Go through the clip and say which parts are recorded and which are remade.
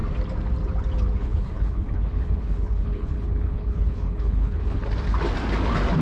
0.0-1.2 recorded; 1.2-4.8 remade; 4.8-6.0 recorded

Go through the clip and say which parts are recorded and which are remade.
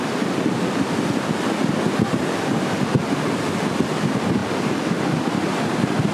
0.0-6.1 recorded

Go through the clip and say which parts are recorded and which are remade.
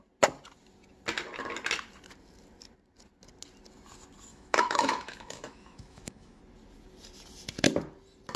0.0-4.3 recorded; 4.3-6.4 remade; 6.4-8.4 recorded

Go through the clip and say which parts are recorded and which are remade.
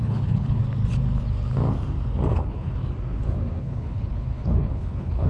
0.0-0.6 remade; 0.6-2.3 recorded; 2.3-2.8 remade; 2.8-3.6 recorded; 3.6-5.3 remade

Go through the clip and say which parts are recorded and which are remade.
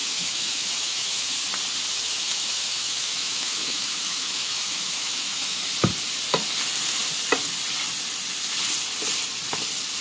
0.0-1.3 remade; 1.3-1.9 recorded; 1.9-5.6 remade; 5.6-10.0 recorded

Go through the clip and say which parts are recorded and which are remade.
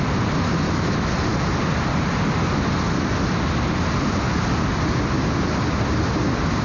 0.0-1.3 recorded; 1.3-2.1 remade; 2.1-6.6 recorded